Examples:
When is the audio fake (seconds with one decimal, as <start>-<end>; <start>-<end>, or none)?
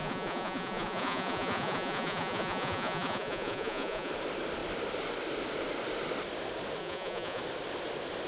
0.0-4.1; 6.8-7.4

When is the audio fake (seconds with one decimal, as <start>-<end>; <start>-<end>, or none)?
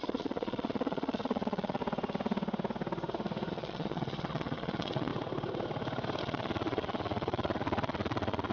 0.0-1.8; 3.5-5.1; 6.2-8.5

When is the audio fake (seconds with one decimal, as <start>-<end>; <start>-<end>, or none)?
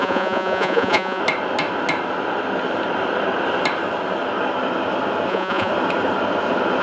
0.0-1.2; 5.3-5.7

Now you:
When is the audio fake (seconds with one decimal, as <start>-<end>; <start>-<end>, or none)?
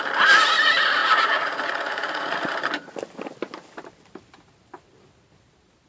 1.0-2.5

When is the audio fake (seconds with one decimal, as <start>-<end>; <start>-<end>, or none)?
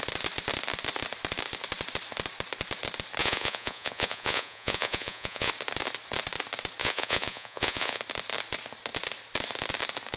3.2-5.5; 6.8-8.0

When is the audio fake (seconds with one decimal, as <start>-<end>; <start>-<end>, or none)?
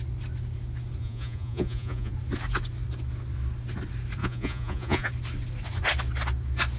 1.0-2.1; 4.2-5.1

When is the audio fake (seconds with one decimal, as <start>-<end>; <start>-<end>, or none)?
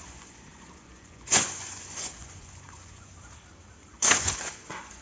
0.0-3.1; 3.9-5.0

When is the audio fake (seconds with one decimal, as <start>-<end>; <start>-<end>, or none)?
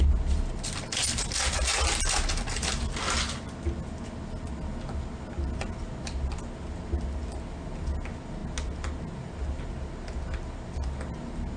none